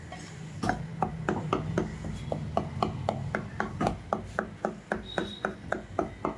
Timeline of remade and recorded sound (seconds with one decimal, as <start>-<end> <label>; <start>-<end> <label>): 0.0-5.2 recorded; 5.2-5.9 remade; 5.9-6.4 recorded